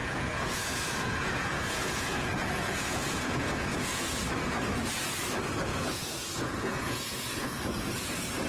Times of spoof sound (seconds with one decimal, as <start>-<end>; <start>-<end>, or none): 0.0-4.2; 5.7-7.6